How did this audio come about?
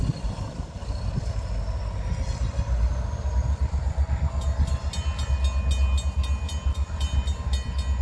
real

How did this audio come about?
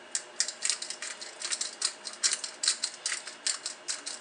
real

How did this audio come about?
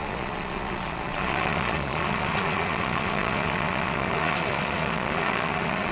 fake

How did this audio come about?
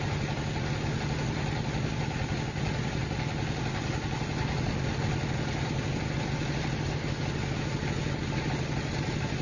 real